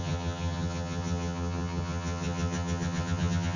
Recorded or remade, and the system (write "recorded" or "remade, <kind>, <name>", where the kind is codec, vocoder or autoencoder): remade, vocoder, HiFi-GAN